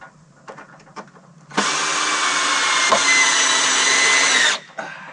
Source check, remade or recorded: recorded